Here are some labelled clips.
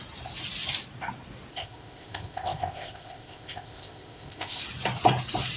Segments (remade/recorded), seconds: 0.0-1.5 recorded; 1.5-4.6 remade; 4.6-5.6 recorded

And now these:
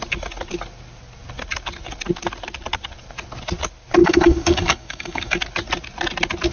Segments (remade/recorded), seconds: 0.0-4.0 recorded; 4.0-5.4 remade; 5.4-6.5 recorded

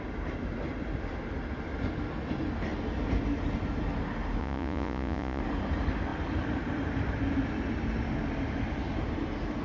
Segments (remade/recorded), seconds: 0.0-4.4 recorded; 4.4-5.4 remade; 5.4-9.6 recorded

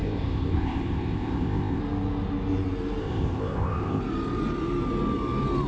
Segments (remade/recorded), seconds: 0.0-1.8 remade; 1.8-3.0 recorded; 3.0-4.0 remade; 4.0-5.7 recorded

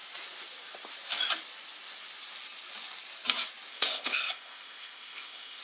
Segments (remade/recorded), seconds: 0.0-3.7 recorded; 3.7-5.6 remade

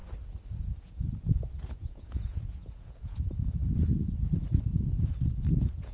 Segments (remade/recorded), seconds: 0.0-0.6 recorded; 0.6-3.6 remade; 3.6-5.3 recorded; 5.3-5.9 remade

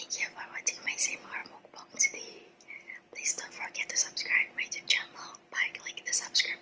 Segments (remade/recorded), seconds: 0.0-6.6 recorded

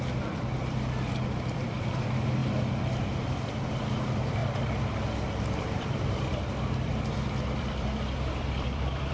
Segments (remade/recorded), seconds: 0.0-4.4 remade; 4.4-5.6 recorded; 5.6-9.1 remade